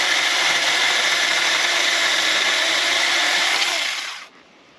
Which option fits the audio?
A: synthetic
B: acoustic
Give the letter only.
A